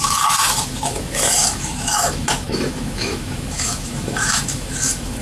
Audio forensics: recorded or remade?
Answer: remade